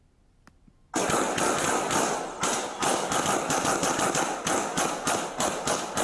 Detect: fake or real real